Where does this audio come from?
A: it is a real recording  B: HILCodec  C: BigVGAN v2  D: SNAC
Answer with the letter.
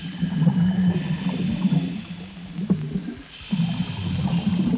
A